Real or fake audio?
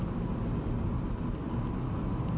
real